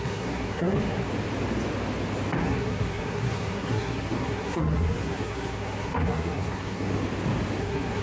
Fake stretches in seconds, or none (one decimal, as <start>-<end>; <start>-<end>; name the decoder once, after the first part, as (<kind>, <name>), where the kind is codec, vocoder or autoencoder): 0.0-1.1 (codec, SNAC); 2.4-6.9; 7.6-8.0